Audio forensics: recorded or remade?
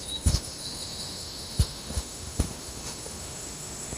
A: remade